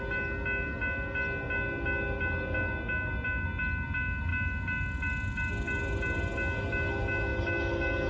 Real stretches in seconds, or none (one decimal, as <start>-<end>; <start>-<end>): 0.0-8.1